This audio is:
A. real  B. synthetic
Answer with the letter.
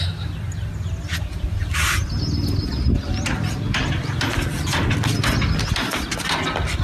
A